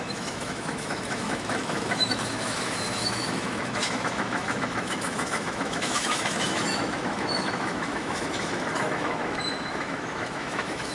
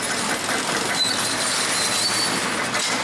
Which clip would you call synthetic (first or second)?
first